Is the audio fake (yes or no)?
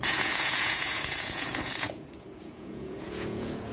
yes